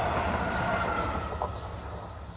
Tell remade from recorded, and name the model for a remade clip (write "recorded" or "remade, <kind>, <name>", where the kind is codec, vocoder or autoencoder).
recorded